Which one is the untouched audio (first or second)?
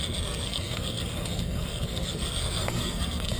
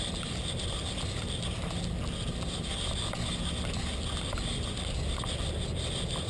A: second